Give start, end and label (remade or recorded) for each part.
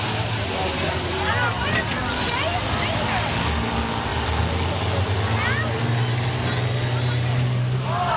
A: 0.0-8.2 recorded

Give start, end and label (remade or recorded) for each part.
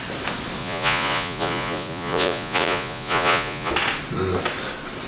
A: 0.0-0.6 recorded; 0.6-3.7 remade; 3.7-5.1 recorded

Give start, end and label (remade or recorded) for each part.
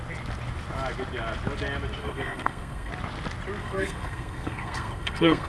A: 0.0-2.0 recorded; 2.0-2.9 remade; 2.9-3.6 recorded; 3.6-5.5 remade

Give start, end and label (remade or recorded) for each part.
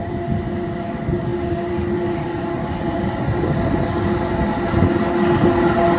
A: 0.0-6.0 recorded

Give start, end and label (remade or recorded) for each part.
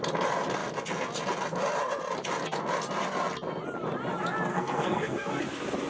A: 0.0-4.5 recorded; 4.5-5.4 remade; 5.4-5.9 recorded